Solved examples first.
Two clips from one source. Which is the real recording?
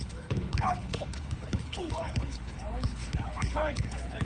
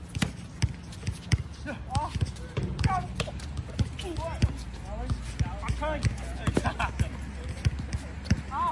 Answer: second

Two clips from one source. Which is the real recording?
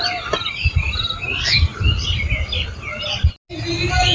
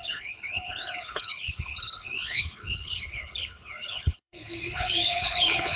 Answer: first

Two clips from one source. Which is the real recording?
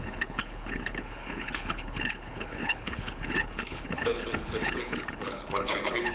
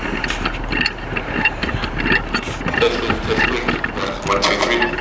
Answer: second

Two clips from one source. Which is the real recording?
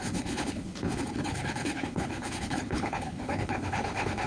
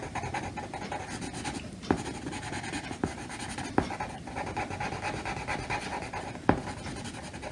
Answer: second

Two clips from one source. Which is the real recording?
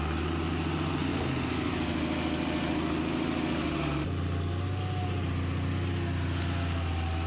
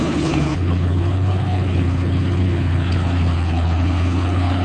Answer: first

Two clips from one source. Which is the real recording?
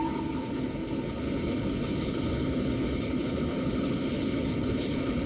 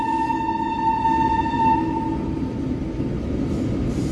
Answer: second